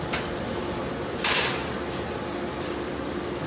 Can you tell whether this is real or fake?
real